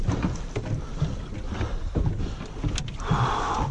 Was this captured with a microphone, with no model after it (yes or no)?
yes